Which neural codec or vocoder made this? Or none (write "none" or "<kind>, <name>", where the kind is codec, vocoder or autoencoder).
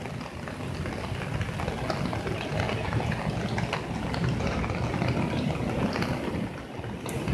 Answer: none